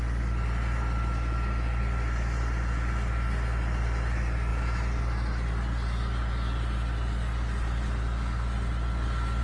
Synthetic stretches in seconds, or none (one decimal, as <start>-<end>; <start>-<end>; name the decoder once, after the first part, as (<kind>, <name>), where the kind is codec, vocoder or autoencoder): none